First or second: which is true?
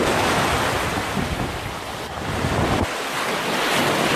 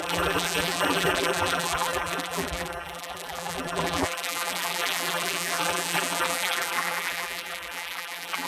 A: first